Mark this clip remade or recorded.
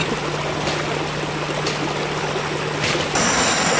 recorded